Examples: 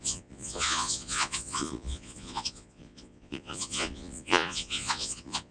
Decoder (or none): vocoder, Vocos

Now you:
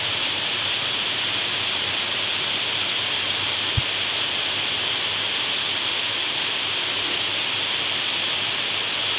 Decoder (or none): none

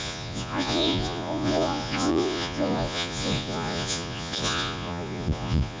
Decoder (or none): vocoder, Vocos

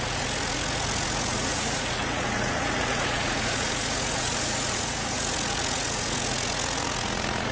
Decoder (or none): vocoder, Vocos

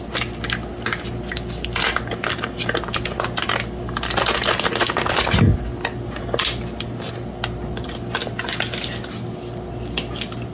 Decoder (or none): none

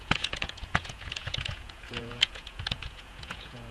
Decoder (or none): vocoder, Vocos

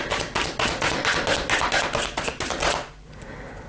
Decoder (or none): none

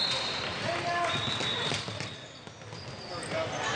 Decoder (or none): none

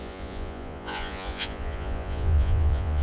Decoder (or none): vocoder, Vocos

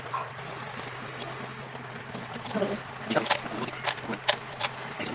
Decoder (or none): none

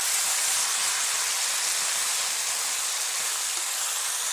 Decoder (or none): none